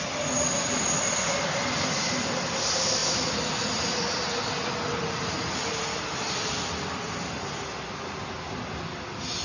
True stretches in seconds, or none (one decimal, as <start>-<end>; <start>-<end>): 0.0-9.4